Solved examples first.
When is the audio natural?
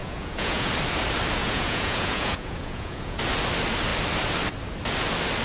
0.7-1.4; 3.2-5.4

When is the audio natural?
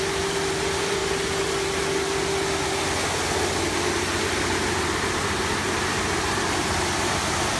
1.0-4.2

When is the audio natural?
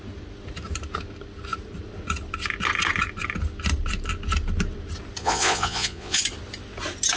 0.0-5.2; 6.2-7.2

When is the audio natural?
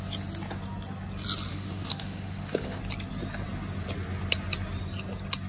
0.0-1.5; 2.8-5.5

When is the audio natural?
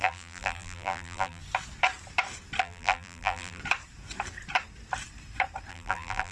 1.4-2.6; 3.6-5.7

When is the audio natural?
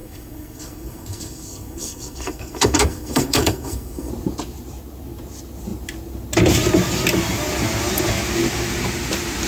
4.1-9.5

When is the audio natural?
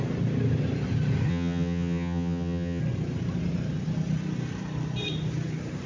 0.0-1.3; 2.8-5.9